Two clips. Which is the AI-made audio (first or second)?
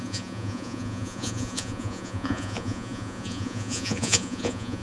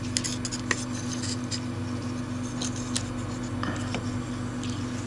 first